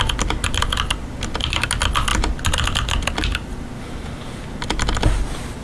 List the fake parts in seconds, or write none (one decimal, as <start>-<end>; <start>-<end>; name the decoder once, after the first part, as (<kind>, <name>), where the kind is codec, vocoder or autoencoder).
none